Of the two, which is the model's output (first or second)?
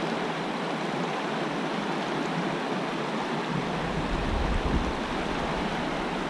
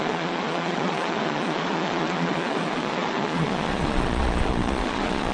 second